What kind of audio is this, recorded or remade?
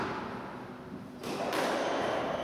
recorded